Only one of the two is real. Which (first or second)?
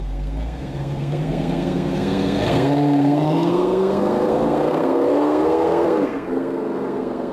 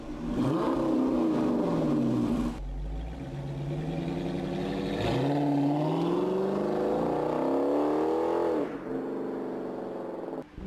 second